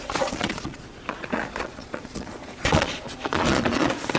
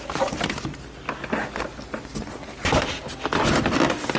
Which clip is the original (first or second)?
second